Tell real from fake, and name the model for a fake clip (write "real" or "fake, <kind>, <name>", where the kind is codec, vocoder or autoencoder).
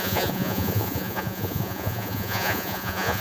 fake, vocoder, Vocos